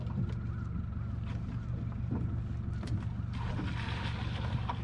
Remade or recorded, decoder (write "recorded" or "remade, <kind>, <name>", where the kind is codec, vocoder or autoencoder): recorded